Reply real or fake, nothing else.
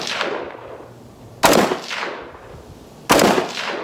real